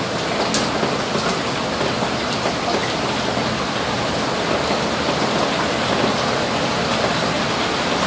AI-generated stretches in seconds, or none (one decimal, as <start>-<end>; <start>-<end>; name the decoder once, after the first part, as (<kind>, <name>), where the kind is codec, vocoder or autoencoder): none